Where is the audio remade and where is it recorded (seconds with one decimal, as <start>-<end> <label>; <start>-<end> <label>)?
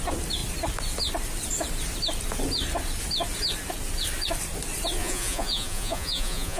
0.0-5.0 recorded; 5.0-6.6 remade